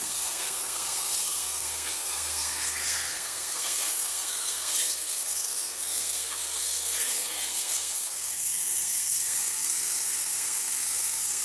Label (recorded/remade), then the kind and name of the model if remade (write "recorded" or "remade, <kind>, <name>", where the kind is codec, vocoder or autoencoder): remade, codec, SNAC